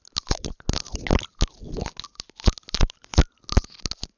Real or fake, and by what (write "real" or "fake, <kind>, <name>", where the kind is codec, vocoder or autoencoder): real